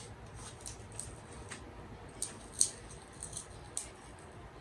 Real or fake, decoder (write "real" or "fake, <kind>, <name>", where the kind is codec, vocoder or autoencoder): real